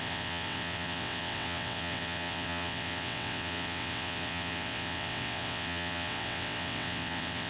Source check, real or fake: fake